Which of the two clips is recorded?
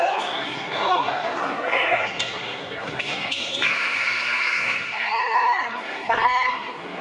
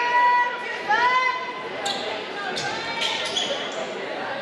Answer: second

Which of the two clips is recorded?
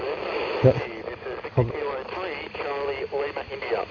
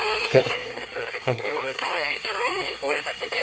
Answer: first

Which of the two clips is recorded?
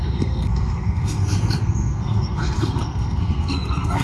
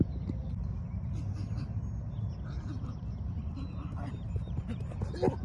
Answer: second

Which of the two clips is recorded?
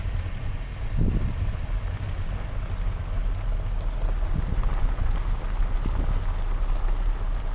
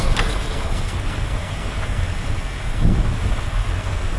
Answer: first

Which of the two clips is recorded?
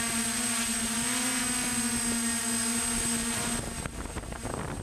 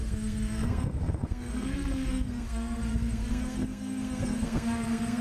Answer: first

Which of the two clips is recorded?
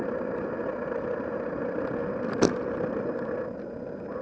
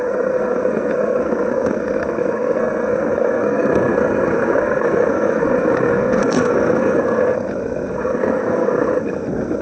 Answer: first